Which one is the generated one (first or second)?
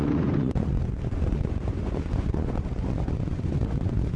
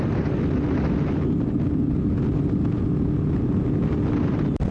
first